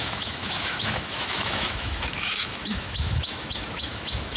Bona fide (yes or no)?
no